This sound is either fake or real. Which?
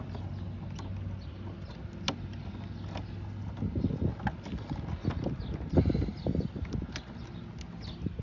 real